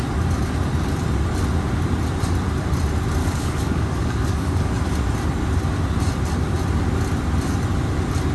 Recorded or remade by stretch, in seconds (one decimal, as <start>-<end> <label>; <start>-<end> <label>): 0.0-3.2 recorded; 3.2-4.7 remade; 4.7-8.3 recorded